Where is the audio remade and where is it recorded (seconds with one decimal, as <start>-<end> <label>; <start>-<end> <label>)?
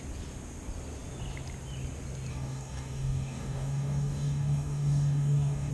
0.0-2.3 recorded; 2.3-5.7 remade